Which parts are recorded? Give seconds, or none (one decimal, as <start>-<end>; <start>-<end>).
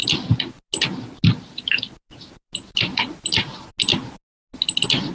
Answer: 0.0-5.1